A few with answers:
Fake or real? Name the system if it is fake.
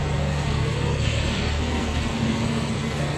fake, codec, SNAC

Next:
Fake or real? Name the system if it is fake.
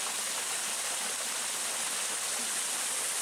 real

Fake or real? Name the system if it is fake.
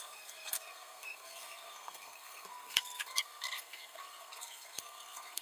fake, codec, SNAC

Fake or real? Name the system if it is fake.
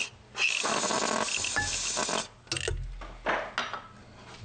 real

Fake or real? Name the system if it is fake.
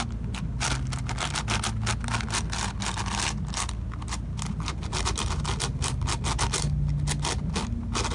real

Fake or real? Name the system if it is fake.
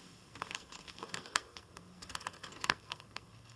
fake, codec, SNAC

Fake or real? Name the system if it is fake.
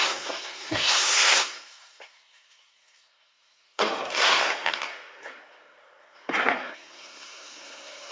fake, codec, SNAC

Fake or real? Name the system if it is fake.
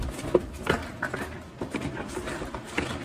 real